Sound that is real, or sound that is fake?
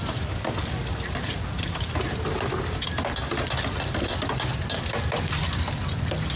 real